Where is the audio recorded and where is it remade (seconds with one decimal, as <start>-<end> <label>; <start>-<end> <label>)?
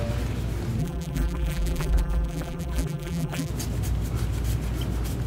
0.0-0.8 recorded; 0.8-3.5 remade; 3.5-5.3 recorded